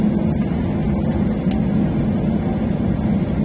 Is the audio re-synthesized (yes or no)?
no